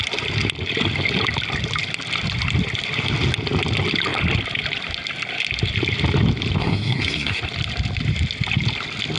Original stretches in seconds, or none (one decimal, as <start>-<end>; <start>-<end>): 0.0-6.6; 7.4-9.2